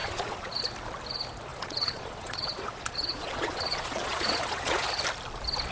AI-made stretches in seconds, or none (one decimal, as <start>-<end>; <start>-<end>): 0.0-0.6; 1.5-4.9